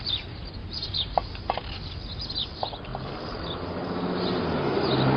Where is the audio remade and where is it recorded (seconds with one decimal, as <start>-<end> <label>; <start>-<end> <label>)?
0.0-5.2 recorded